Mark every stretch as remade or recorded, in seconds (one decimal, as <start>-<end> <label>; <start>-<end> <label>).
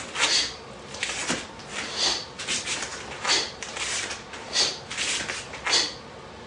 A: 0.0-6.5 recorded